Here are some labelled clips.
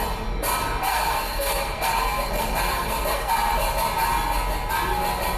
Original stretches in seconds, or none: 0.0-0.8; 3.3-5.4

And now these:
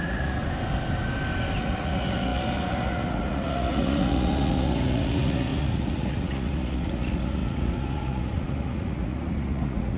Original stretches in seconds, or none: 0.4-1.6

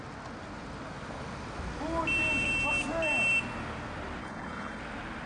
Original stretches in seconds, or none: 0.0-4.2; 4.8-5.3

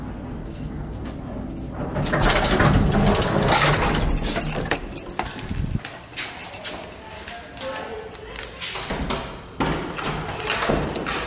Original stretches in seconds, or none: 0.0-0.4; 1.0-11.3

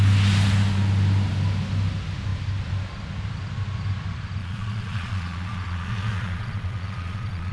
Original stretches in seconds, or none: 0.0-4.4

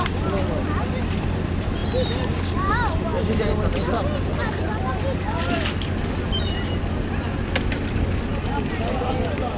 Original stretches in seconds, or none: 0.0-9.6

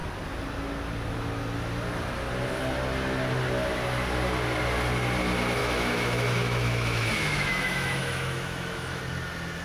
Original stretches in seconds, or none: 0.0-5.6; 9.0-9.6